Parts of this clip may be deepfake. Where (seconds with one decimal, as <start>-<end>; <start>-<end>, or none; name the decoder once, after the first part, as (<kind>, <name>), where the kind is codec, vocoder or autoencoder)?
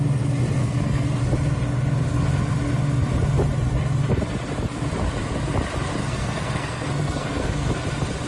0.6-1.2 (codec, SNAC); 6.0-7.7